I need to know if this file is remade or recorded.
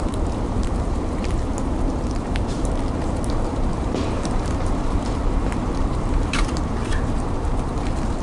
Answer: remade